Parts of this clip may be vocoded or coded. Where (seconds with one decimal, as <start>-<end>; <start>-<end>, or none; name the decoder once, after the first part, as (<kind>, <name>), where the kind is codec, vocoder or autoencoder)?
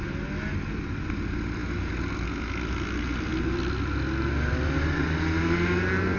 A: none